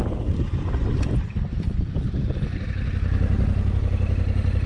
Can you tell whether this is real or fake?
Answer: real